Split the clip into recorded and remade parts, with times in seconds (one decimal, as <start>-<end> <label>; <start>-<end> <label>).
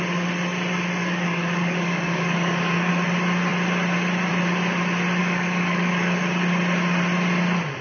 0.0-1.0 recorded; 1.0-2.9 remade; 2.9-5.2 recorded; 5.2-6.3 remade; 6.3-7.8 recorded